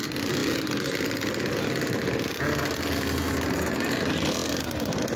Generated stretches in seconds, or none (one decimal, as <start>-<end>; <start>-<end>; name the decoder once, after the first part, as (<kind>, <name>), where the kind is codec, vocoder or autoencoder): none